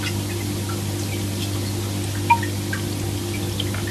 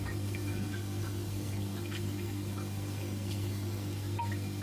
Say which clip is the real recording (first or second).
first